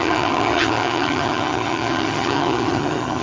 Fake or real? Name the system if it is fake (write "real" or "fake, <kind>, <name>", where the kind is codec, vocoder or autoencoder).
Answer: fake, vocoder, HiFi-GAN